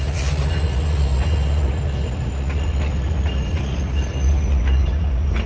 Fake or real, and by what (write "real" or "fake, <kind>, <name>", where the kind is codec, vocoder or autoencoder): fake, vocoder, Vocos